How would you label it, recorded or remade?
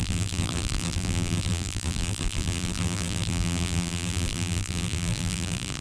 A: remade